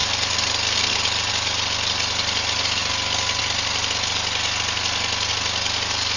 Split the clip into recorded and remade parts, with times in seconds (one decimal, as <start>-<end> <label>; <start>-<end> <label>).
0.0-6.2 recorded